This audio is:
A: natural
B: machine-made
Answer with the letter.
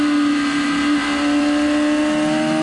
A